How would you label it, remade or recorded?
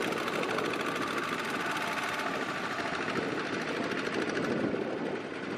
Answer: recorded